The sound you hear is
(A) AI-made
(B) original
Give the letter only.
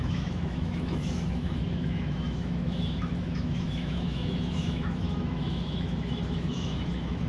A